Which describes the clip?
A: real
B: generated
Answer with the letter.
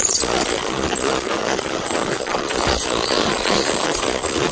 B